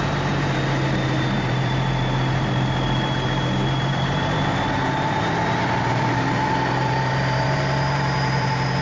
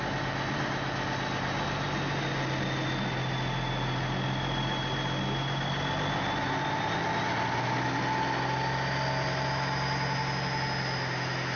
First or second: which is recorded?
second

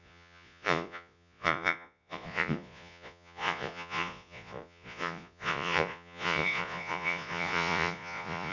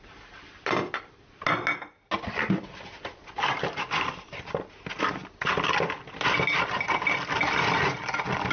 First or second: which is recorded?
second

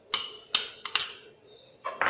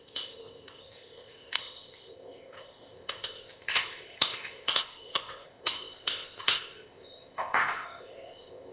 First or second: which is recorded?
first